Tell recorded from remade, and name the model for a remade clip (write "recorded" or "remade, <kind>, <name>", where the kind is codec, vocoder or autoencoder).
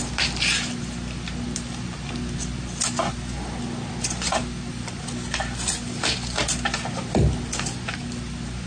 recorded